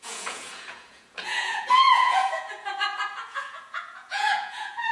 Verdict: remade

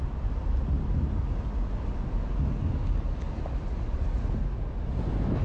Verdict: recorded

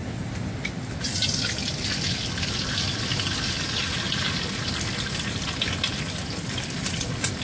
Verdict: recorded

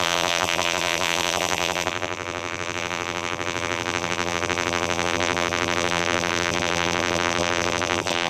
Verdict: remade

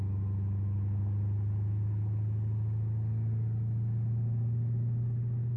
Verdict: recorded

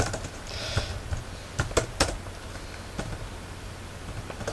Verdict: recorded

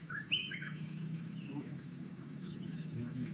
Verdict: remade